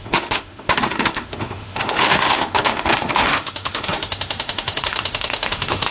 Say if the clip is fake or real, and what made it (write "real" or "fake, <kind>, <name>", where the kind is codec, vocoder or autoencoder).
fake, autoencoder, DAC-VAE